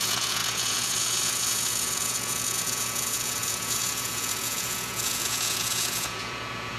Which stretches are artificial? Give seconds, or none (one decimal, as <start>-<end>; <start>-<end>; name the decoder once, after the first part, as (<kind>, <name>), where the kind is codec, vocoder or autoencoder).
0.0-6.8 (vocoder, Vocos)